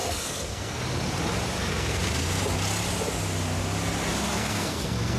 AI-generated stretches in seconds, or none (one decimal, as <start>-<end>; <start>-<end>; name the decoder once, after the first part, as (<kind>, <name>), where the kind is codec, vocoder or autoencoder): 0.0-0.8 (codec, SNAC); 1.7-2.4; 4.3-5.2